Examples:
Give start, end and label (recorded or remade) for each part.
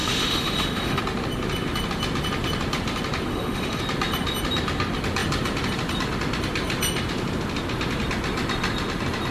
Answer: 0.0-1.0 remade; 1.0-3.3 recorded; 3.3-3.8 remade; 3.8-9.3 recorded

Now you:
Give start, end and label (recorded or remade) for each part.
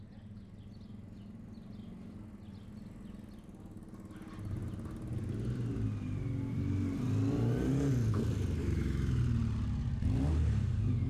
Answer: 0.0-8.6 recorded; 8.6-9.2 remade; 9.2-11.1 recorded